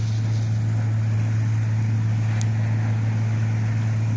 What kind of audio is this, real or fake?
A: real